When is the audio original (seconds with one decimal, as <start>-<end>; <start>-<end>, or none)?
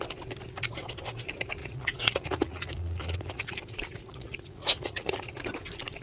0.0-1.6; 5.2-6.0